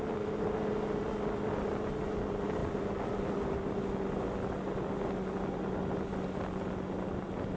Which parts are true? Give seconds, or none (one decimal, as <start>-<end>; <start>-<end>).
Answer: 0.0-7.6